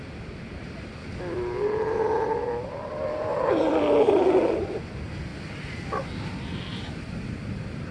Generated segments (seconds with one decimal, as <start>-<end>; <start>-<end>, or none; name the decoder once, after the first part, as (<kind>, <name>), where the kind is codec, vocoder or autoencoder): none